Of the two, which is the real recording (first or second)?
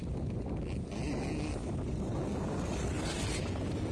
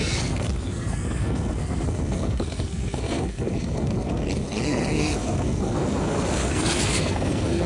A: first